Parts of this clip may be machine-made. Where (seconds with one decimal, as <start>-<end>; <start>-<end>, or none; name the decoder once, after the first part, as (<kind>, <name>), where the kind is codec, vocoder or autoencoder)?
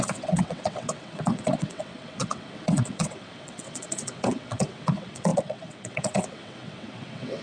0.0-7.4 (vocoder, WaveNeXt)